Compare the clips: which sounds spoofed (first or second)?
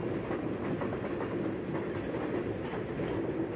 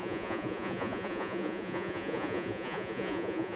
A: second